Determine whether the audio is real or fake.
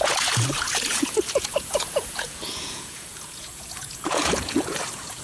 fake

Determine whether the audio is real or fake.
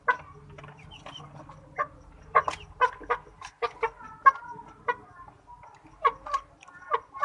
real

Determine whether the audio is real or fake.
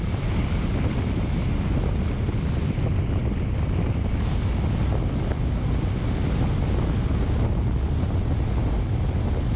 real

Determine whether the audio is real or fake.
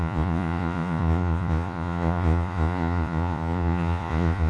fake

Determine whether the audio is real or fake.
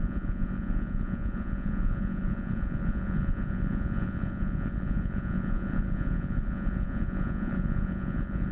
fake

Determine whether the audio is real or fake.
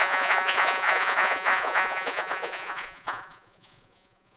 fake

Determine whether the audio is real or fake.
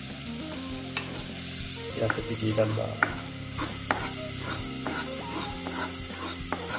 real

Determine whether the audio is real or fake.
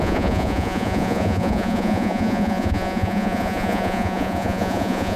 fake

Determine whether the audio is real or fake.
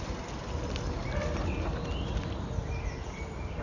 real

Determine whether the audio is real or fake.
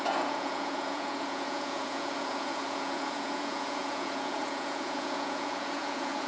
fake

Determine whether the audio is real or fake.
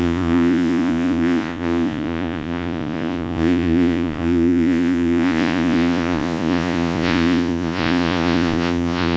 fake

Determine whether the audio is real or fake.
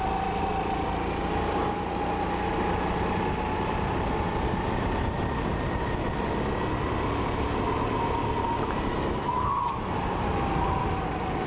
real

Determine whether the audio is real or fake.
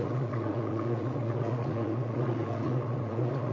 fake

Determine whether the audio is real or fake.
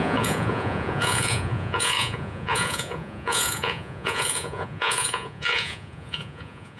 fake